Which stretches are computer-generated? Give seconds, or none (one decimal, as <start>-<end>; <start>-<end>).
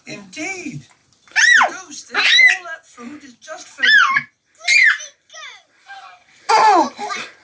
none